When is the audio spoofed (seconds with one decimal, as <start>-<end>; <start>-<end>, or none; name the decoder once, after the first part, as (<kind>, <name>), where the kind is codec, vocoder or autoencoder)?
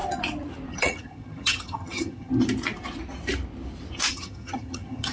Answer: 0.7-2.3 (vocoder, HiFi-GAN); 4.1-5.1